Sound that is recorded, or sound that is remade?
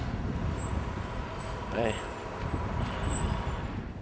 remade